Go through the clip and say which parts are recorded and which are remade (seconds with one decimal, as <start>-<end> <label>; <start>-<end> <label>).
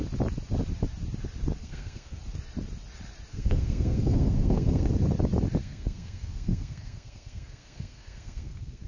0.0-1.6 recorded; 1.6-2.2 remade; 2.2-3.3 recorded; 3.3-4.9 remade; 4.9-5.6 recorded; 5.6-8.9 remade